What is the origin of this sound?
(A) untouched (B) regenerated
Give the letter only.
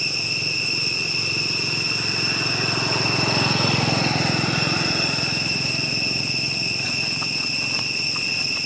A